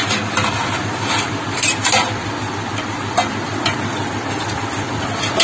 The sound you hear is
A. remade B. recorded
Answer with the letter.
B